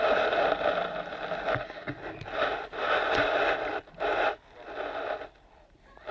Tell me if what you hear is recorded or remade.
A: recorded